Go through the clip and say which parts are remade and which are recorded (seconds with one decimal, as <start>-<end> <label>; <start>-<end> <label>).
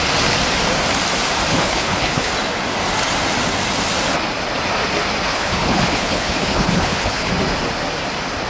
0.0-1.5 recorded; 1.5-2.3 remade; 2.3-5.3 recorded; 5.3-7.3 remade; 7.3-8.5 recorded